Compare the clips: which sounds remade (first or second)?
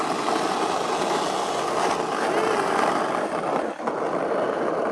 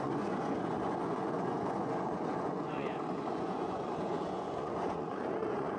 second